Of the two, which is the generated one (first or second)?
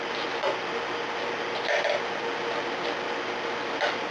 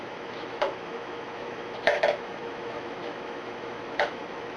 second